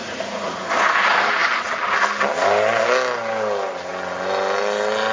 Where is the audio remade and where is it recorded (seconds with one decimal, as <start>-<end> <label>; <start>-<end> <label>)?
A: 0.0-0.7 remade; 0.7-5.1 recorded